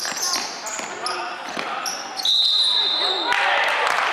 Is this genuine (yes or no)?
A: yes